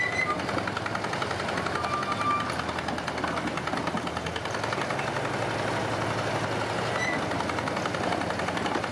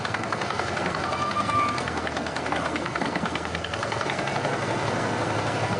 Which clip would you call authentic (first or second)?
first